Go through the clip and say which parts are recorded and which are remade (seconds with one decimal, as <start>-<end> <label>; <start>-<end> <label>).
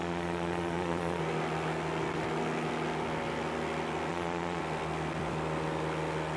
0.0-1.2 remade; 1.2-4.1 recorded; 4.1-4.6 remade; 4.6-6.4 recorded